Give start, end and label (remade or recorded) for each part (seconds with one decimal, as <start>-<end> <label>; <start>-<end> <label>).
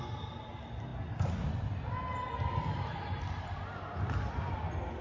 0.0-5.0 recorded